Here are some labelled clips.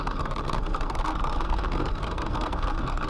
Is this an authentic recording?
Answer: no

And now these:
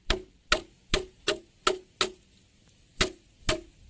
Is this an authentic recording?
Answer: yes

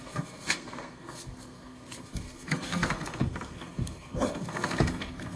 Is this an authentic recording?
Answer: no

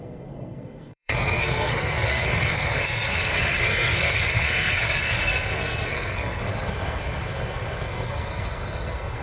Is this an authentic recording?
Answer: no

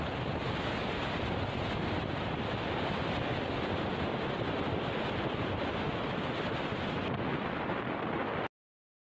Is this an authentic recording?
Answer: yes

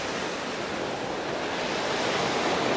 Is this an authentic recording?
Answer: yes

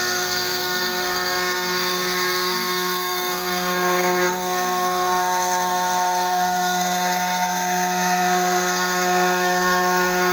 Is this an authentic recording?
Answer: no